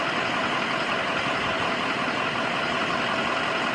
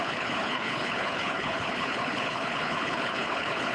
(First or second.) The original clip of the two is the first